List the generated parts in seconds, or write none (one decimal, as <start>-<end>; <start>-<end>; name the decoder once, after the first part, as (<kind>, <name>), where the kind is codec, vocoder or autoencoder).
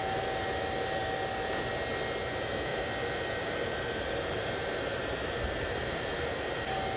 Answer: 2.7-6.6 (vocoder, BigVGAN v2)